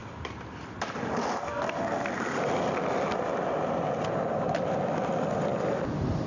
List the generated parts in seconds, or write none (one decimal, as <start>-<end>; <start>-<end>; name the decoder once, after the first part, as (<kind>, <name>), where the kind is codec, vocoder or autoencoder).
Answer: 0.0-3.1 (vocoder, BigVGAN v2); 5.5-6.3